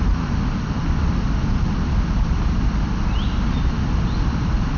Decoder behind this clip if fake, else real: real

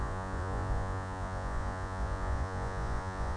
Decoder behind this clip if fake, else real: fake, vocoder, Vocos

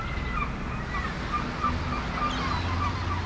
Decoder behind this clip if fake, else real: real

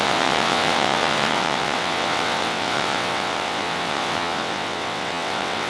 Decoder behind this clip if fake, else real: fake, vocoder, WaveNeXt